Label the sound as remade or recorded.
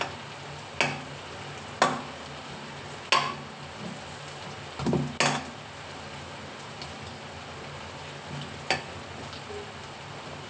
recorded